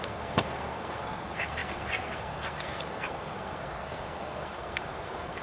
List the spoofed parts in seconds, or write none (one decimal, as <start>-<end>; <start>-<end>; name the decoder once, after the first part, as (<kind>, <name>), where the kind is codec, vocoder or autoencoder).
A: 0.0-5.4 (codec, SNAC)